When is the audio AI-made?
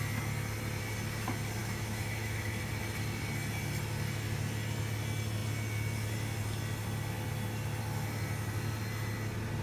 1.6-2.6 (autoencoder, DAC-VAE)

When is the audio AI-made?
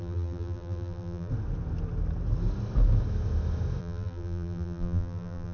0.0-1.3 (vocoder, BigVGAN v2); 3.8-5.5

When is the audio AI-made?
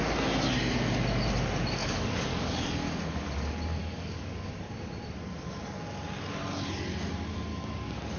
1.8-2.5 (codec, DAC); 3.8-4.7; 7.5-8.2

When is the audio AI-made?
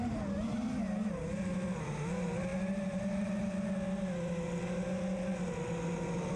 none